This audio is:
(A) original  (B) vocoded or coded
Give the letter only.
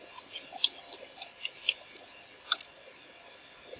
A